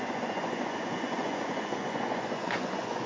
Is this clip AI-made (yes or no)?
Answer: yes